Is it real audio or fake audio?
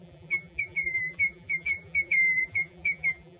fake